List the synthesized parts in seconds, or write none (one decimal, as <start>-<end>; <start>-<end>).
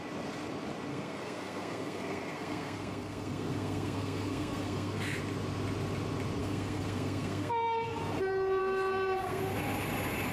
0.9-5.2; 6.4-8.0; 8.6-9.4